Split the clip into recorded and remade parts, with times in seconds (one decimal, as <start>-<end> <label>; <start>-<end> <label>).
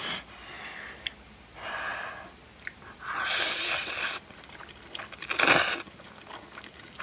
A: 0.0-7.0 recorded